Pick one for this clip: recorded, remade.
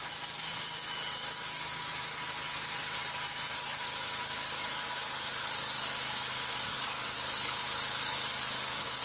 remade